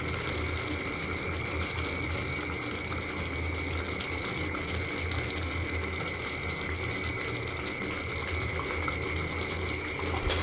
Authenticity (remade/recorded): recorded